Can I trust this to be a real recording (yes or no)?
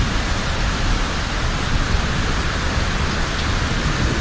yes